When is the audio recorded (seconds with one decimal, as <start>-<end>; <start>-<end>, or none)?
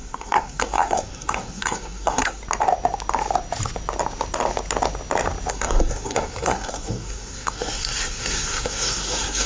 2.4-5.5